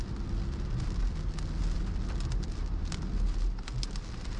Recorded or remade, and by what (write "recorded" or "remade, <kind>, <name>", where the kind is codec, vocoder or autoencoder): recorded